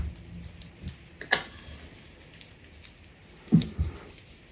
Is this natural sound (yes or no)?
yes